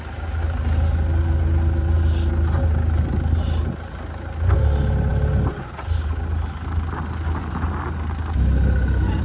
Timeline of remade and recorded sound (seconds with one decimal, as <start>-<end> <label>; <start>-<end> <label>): 0.0-9.2 recorded

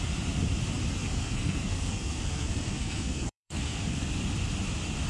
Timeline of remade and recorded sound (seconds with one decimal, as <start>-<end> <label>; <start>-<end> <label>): 0.0-1.0 recorded; 1.0-4.1 remade; 4.1-5.1 recorded

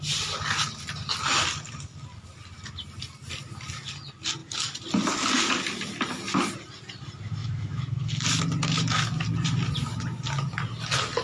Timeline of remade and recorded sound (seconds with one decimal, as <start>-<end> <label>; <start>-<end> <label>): 0.0-7.4 recorded; 7.4-8.1 remade; 8.1-11.2 recorded